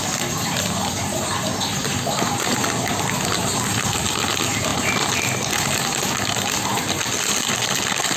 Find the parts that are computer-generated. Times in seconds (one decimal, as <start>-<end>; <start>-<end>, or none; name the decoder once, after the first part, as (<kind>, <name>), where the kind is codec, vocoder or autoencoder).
none